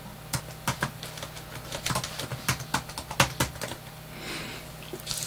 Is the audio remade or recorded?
recorded